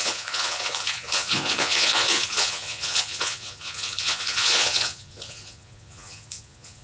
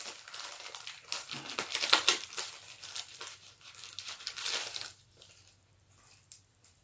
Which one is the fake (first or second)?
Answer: first